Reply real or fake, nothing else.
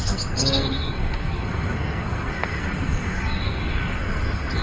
fake